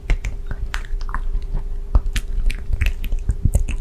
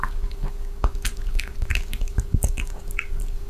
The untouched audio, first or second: first